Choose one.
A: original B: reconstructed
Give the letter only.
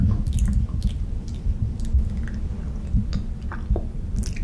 A